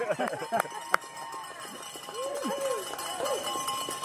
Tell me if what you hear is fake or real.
real